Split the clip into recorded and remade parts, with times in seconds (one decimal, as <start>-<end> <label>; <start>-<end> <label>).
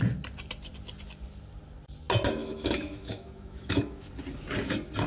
0.0-2.4 recorded; 2.4-4.1 remade; 4.1-5.1 recorded